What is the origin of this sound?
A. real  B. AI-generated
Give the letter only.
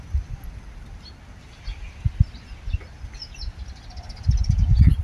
A